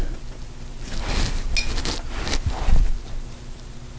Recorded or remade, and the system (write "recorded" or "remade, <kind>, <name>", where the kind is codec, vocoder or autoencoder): recorded